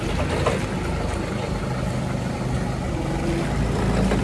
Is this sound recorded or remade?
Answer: recorded